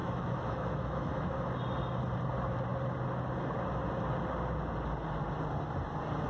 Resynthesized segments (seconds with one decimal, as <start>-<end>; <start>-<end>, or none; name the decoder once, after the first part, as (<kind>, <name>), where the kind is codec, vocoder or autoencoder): 0.0-1.3 (autoencoder, DAC-VAE)